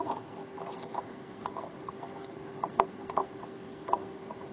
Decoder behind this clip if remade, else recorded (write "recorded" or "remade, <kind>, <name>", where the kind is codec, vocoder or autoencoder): remade, codec, SNAC